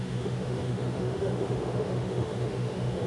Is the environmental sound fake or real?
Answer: fake